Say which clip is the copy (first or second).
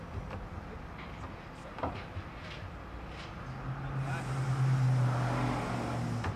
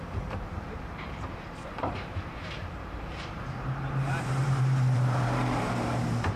second